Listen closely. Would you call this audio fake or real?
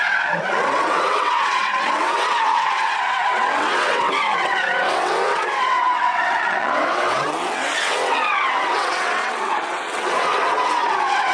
fake